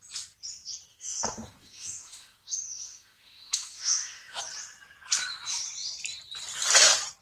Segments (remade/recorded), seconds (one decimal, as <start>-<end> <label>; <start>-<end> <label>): 0.0-0.9 recorded; 0.9-4.4 remade; 4.4-7.2 recorded